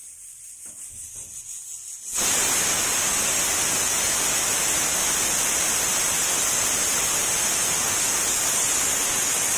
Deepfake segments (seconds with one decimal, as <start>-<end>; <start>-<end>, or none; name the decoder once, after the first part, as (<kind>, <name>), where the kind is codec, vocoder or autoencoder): none

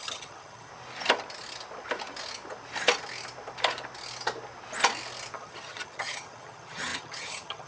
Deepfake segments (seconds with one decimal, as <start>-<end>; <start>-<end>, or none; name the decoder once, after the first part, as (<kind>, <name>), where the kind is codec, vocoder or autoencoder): 0.0-0.7 (vocoder, HiFi-GAN); 5.3-7.7

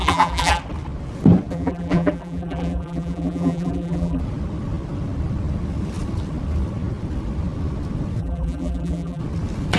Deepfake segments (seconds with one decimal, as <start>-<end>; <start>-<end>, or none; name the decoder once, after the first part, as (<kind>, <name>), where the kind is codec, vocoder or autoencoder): 0.0-0.6 (vocoder, BigVGAN v2); 1.5-4.2; 8.2-9.2

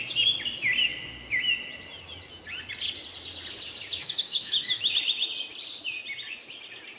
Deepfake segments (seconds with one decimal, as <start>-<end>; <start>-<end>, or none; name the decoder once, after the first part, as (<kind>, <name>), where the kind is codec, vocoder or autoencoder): 4.0-4.9 (autoencoder, DAC-VAE)

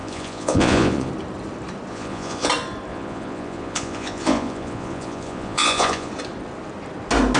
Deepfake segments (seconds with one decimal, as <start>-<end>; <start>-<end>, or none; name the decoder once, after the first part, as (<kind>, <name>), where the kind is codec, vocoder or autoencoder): 0.0-1.1 (vocoder, Vocos); 1.9-2.5; 2.9-6.1

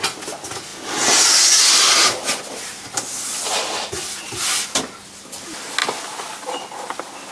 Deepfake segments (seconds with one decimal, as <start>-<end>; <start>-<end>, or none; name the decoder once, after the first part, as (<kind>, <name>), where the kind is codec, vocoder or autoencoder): none